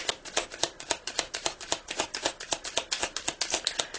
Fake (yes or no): no